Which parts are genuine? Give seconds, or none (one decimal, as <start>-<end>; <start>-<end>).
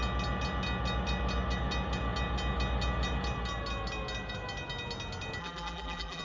0.0-5.4